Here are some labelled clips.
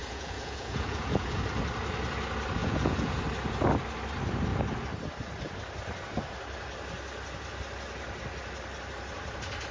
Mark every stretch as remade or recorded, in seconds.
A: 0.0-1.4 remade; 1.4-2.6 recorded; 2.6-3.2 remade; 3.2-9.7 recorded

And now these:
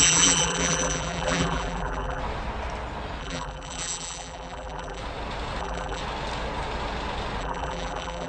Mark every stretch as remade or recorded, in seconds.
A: 0.0-2.2 remade; 2.2-3.2 recorded; 3.2-5.0 remade; 5.0-5.6 recorded; 5.6-6.0 remade; 6.0-7.4 recorded; 7.4-8.3 remade

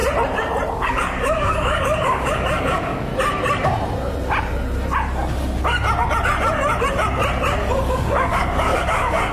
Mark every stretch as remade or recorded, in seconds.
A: 0.0-0.7 recorded; 0.7-3.1 remade; 3.1-7.9 recorded; 7.9-9.3 remade